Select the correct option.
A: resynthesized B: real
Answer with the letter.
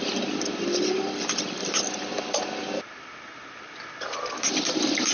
B